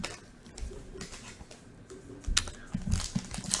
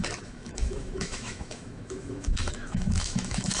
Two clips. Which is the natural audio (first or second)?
first